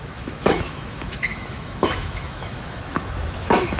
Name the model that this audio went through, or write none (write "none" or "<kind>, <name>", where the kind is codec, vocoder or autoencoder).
autoencoder, DAC-VAE